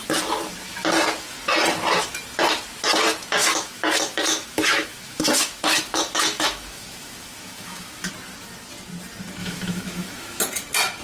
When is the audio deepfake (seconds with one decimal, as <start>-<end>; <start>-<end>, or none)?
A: 3.4-8.1; 9.4-10.4